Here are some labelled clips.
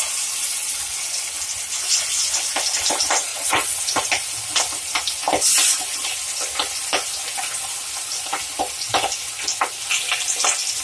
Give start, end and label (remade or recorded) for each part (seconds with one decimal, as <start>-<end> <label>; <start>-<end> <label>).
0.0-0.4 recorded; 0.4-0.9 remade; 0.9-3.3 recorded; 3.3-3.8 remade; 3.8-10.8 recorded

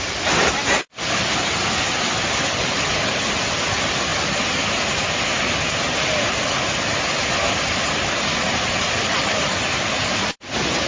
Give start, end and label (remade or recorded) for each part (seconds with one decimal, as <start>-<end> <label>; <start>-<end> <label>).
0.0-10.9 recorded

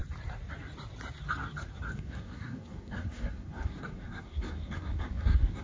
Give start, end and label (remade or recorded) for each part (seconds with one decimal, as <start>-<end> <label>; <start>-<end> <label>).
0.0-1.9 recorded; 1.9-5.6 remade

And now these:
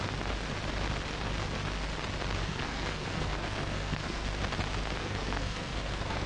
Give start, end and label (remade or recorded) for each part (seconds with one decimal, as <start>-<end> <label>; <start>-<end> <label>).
0.0-2.4 recorded; 2.4-4.4 remade; 4.4-5.0 recorded; 5.0-6.3 remade